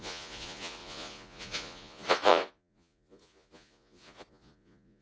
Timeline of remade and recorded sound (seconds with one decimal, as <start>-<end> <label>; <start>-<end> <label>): 0.0-5.0 remade